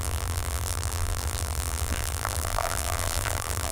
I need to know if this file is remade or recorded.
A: remade